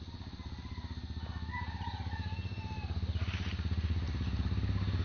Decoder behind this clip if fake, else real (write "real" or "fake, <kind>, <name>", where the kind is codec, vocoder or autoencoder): real